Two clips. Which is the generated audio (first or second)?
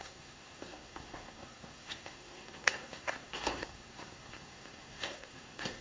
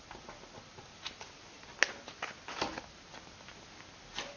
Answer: first